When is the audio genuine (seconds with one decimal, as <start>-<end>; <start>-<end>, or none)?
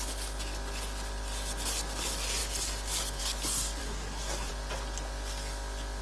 0.0-3.8; 4.5-6.0